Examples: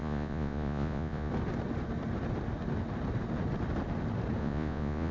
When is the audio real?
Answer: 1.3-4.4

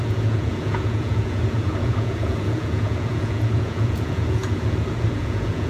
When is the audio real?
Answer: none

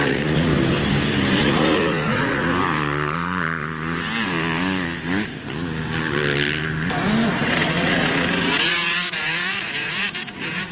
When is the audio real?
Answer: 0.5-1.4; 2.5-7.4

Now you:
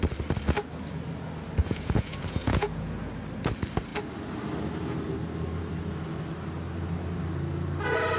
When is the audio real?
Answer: 0.0-1.6; 3.1-8.2

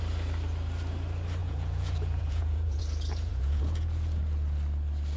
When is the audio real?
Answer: 0.0-1.4; 2.8-3.3; 4.2-5.2

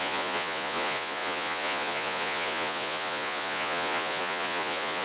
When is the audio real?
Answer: none

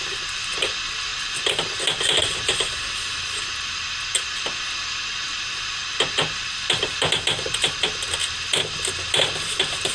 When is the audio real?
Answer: 0.0-9.9